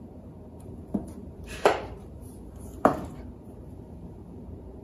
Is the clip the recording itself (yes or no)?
no